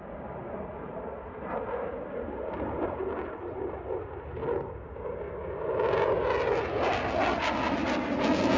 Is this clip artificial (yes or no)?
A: no